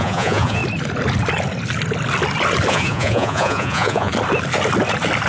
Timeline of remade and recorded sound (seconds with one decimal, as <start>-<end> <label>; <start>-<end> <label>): 0.0-0.6 remade; 0.6-2.7 recorded; 2.7-4.1 remade; 4.1-5.3 recorded